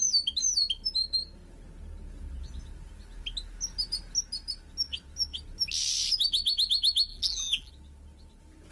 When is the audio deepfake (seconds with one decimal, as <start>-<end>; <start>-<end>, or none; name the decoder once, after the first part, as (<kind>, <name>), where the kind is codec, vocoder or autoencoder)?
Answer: 7.1-7.7 (vocoder, BigVGAN v2)